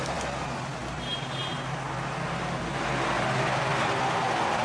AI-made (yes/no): no